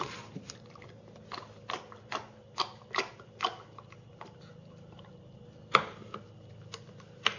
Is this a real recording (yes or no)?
yes